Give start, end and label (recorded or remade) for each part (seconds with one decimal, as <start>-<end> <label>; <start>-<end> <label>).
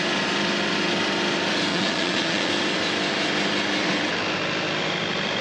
0.0-1.7 recorded; 1.7-2.5 remade; 2.5-5.4 recorded